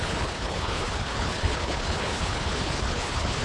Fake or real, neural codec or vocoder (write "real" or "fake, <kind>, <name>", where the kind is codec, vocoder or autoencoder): fake, codec, HILCodec